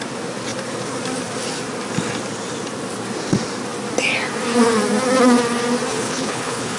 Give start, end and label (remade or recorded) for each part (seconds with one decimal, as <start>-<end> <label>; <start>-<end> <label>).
0.0-5.9 recorded; 5.9-6.8 remade